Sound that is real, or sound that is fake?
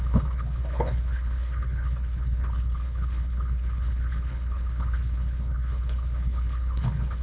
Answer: fake